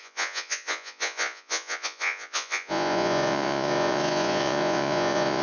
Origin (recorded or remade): remade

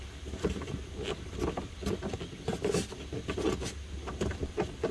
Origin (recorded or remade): recorded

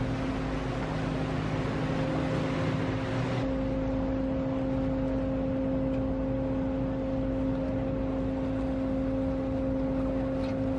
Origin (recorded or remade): recorded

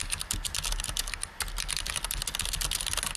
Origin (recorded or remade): recorded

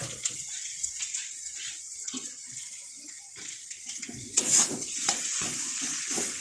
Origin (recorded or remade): remade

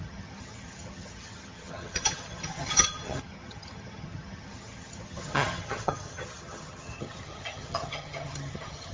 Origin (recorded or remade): remade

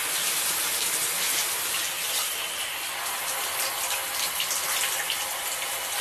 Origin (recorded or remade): recorded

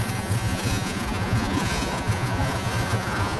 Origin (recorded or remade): remade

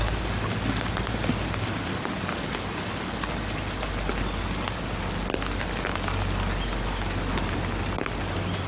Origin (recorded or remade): recorded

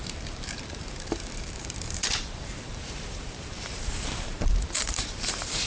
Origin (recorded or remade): remade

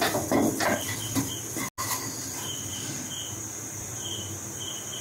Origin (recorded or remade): recorded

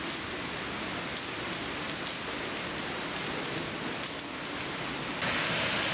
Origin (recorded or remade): recorded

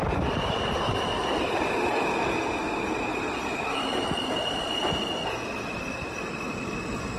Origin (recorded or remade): recorded